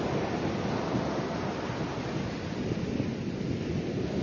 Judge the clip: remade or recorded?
recorded